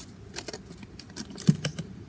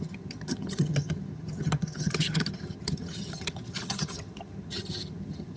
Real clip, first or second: first